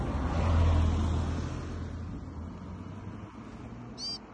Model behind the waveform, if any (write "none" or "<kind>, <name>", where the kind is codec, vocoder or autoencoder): none